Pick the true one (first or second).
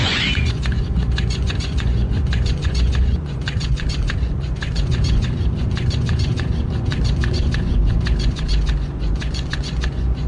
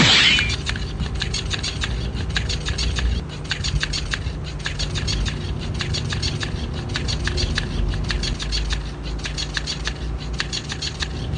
second